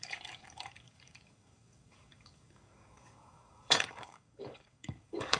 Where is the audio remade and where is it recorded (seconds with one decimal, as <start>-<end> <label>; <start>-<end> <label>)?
0.0-5.4 remade